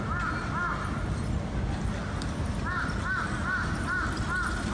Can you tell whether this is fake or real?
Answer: real